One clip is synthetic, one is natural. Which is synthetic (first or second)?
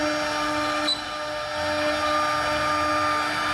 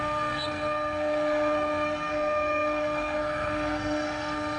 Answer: second